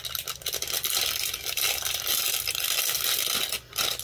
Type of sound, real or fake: real